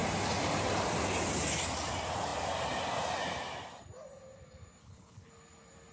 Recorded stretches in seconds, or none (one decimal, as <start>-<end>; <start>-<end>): 0.0-4.8; 5.3-5.9